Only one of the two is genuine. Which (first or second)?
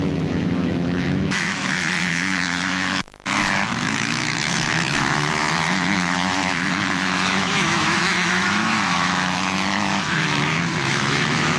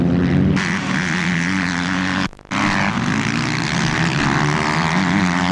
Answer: second